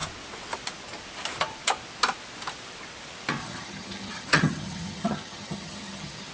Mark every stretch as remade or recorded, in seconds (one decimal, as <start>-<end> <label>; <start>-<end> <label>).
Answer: 0.0-3.4 recorded; 3.4-6.3 remade